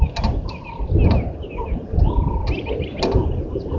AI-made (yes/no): no